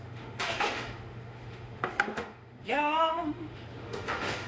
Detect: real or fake fake